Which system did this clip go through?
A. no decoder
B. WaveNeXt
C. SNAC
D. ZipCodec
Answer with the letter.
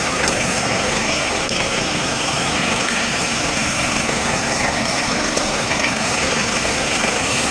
C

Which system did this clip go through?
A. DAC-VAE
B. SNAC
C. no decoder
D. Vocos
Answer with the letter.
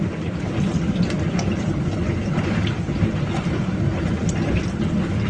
C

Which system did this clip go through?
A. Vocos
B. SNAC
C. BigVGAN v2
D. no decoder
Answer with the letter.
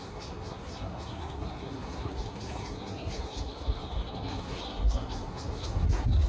B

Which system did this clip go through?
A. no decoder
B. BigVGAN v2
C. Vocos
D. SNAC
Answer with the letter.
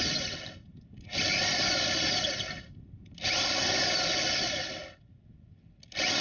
A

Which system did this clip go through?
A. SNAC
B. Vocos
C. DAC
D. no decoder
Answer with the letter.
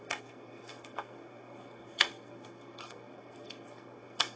A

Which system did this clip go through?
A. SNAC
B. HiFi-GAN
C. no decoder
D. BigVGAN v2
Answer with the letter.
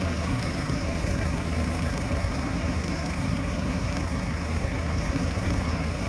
A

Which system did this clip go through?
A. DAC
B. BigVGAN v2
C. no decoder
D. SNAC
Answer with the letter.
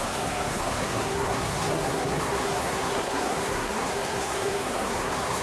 D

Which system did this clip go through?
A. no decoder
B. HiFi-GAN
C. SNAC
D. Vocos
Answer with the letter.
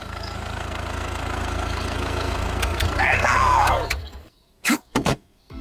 C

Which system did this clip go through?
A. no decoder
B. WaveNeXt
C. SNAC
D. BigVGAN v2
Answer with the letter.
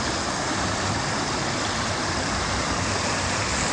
A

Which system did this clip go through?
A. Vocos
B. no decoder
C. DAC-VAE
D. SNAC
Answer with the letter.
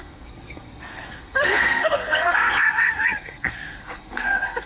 D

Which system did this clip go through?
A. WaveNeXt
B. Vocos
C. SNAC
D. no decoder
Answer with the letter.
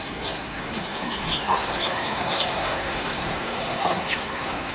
C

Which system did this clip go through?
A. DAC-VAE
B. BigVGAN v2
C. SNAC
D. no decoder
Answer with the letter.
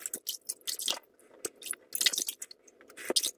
D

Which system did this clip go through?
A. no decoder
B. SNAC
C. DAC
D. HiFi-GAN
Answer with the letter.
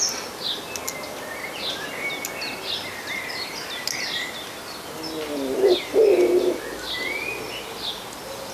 A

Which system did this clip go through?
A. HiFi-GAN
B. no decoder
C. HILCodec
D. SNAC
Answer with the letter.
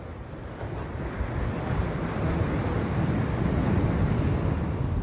B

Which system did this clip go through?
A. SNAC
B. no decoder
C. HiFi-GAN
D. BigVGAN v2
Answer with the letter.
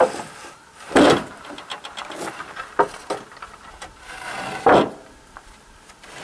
B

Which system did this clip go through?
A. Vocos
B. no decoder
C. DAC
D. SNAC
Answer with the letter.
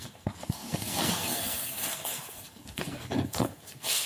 D